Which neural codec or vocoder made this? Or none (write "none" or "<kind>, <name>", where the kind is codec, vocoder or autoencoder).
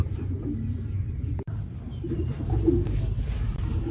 vocoder, BigVGAN v2